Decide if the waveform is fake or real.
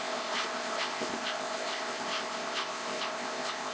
fake